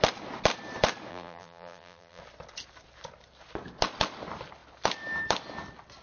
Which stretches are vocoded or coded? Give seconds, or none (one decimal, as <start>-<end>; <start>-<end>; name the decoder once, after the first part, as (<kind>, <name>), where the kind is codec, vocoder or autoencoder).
1.1-2.2 (vocoder, BigVGAN v2)